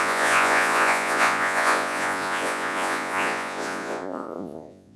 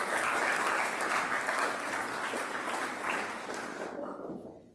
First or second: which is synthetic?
first